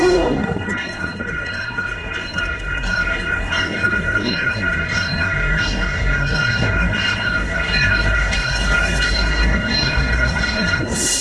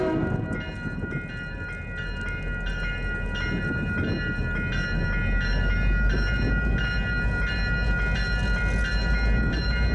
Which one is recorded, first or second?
second